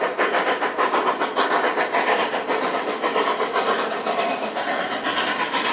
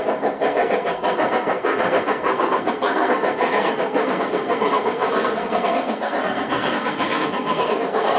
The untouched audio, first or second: first